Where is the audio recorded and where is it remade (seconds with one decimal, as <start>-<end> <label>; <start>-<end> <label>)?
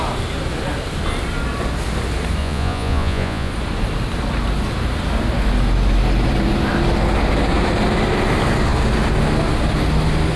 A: 0.0-2.4 recorded; 2.4-3.5 remade; 3.5-10.4 recorded